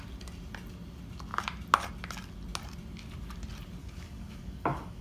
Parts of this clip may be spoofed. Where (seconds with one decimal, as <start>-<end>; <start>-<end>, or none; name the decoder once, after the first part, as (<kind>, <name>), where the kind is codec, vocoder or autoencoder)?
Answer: 3.8-5.0 (codec, DAC)